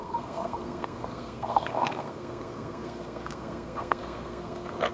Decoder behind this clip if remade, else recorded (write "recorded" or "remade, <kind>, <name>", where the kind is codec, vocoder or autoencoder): remade, codec, SNAC